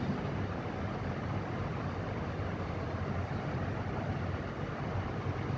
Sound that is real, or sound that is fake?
real